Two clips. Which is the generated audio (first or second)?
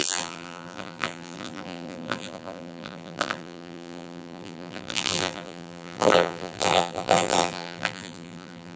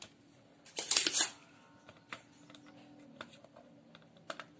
first